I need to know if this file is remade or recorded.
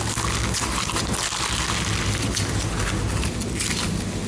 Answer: recorded